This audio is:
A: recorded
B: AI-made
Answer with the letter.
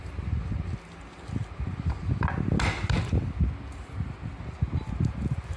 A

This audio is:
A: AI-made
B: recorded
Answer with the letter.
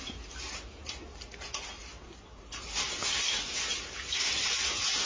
B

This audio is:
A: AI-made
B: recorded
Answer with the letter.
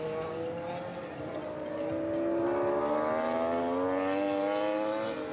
B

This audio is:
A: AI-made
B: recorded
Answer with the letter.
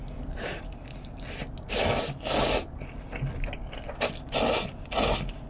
B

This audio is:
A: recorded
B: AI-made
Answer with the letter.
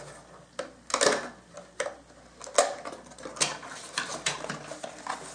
A